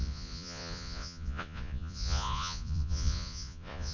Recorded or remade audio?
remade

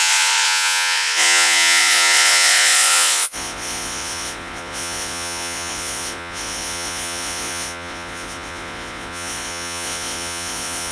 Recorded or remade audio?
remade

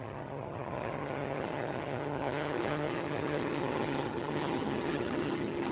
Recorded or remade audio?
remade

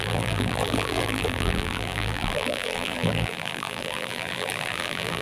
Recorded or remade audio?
remade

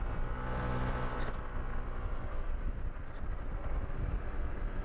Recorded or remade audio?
recorded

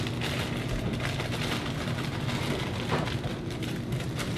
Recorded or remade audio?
recorded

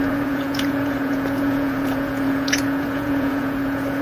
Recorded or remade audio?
remade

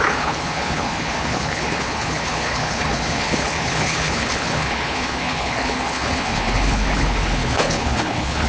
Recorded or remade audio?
remade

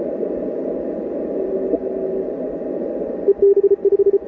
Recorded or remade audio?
recorded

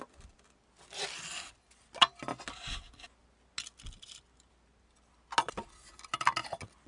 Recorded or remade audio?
recorded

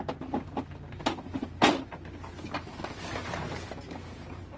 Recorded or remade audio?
recorded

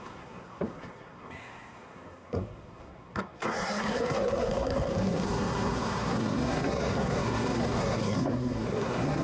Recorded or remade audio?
remade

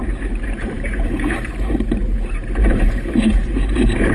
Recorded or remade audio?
remade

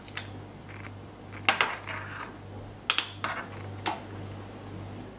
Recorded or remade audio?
recorded